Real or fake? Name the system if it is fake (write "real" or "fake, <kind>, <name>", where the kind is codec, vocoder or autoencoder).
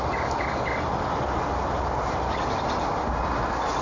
real